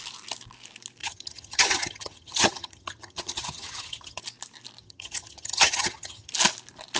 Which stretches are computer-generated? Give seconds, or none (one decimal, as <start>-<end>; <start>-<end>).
1.0-4.2; 4.8-6.3